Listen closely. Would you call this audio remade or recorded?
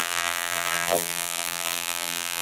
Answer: remade